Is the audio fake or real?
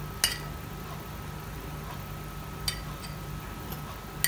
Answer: real